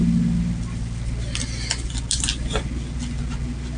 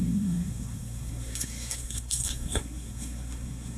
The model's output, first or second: second